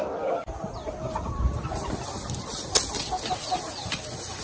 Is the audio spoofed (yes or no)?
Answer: no